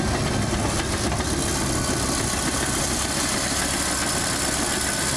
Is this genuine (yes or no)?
yes